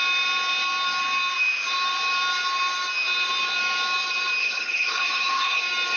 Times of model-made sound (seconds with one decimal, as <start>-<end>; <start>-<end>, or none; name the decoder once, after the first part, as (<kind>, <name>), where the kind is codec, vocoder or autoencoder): 4.4-5.6 (codec, HILCodec)